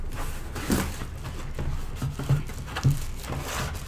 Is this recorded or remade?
recorded